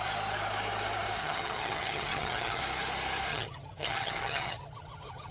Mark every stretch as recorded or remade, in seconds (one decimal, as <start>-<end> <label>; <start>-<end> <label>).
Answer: 0.0-1.2 recorded; 1.2-2.6 remade; 2.6-3.3 recorded; 3.3-5.3 remade